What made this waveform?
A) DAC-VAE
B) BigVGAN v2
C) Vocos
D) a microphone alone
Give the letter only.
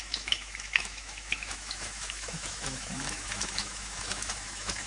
A